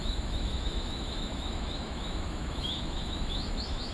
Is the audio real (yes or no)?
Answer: no